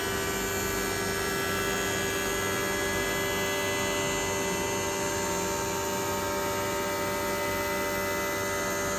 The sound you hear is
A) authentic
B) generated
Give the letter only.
A